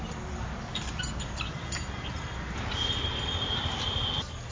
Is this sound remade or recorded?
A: recorded